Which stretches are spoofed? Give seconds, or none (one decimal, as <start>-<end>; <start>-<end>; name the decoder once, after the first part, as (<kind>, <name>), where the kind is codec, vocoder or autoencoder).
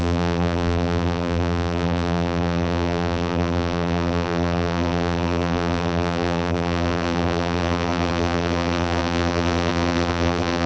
0.0-10.7 (vocoder, BigVGAN v2)